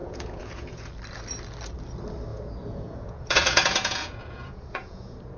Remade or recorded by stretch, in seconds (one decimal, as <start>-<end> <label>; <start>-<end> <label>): 0.0-0.9 remade; 0.9-2.3 recorded; 2.3-5.4 remade